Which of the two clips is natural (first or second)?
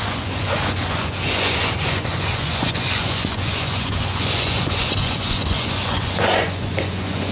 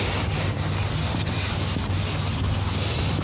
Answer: second